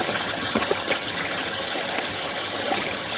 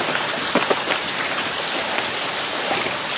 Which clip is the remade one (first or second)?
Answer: first